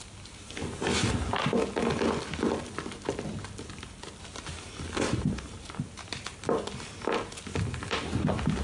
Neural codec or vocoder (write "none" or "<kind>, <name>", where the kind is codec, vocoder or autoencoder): none